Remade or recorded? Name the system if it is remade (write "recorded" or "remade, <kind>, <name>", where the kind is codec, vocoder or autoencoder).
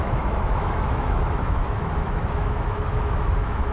remade, autoencoder, DAC-VAE